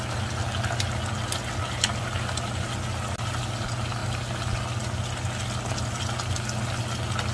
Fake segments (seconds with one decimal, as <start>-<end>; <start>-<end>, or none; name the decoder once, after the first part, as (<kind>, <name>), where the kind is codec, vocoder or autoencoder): none